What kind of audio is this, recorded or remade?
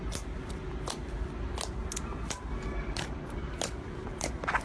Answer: recorded